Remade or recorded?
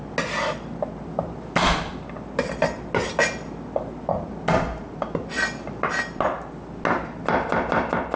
recorded